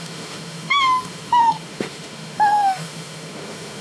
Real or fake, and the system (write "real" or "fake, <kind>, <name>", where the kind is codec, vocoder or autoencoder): fake, autoencoder, DAC-VAE